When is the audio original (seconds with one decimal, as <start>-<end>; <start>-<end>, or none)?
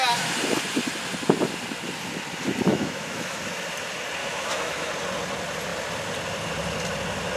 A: 0.0-2.7; 3.4-4.2; 4.9-7.4